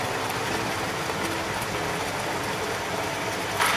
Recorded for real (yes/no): yes